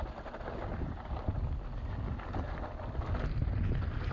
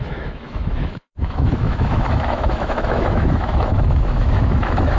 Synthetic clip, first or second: second